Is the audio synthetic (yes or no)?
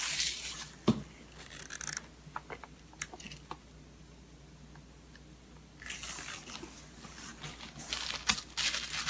no